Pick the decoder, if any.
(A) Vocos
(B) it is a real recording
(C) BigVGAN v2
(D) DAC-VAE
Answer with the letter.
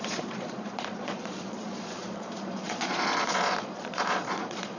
A